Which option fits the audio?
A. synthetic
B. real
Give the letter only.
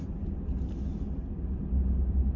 B